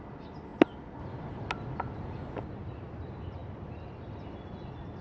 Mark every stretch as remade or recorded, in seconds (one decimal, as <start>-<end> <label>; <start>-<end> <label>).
0.0-5.0 recorded